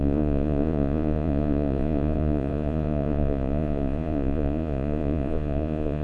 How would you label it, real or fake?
fake